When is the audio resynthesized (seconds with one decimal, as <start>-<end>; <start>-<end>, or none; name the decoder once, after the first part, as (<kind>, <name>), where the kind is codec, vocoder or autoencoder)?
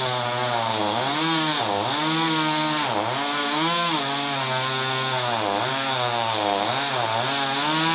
0.7-1.6 (codec, DAC); 3.4-4.0; 5.7-6.9